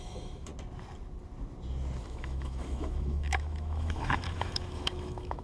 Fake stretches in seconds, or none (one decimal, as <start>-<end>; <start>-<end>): 0.0-0.5; 2.0-5.4